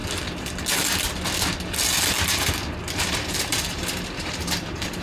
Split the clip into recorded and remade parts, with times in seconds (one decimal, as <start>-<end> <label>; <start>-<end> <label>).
0.0-3.0 recorded; 3.0-5.0 remade

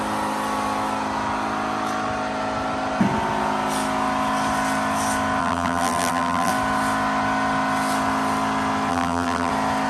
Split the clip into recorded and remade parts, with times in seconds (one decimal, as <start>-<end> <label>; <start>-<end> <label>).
0.0-5.4 recorded; 5.4-6.5 remade; 6.5-8.9 recorded; 8.9-9.5 remade; 9.5-9.9 recorded

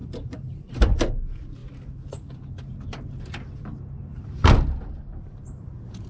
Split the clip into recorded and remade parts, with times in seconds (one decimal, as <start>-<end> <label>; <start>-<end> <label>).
0.0-0.8 remade; 0.8-4.1 recorded; 4.1-6.1 remade

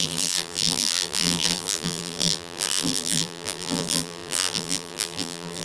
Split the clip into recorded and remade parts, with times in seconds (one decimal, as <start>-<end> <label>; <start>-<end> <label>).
0.0-5.6 remade

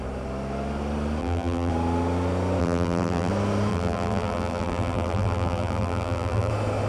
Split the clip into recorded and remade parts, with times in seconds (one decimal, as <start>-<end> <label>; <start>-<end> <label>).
0.0-1.2 recorded; 1.2-1.7 remade; 1.7-2.6 recorded; 2.6-3.3 remade; 3.3-3.7 recorded; 3.7-6.5 remade; 6.5-6.9 recorded

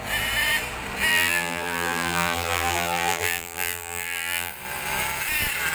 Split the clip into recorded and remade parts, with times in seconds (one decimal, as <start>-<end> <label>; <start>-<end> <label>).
0.0-1.1 recorded; 1.1-4.5 remade; 4.5-5.7 recorded